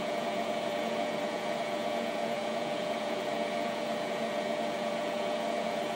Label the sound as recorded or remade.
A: remade